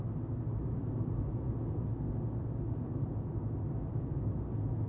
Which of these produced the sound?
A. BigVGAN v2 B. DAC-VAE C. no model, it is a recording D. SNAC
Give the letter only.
C